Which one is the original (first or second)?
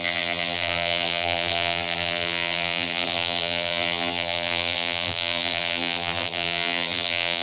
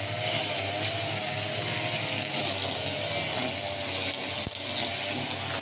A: second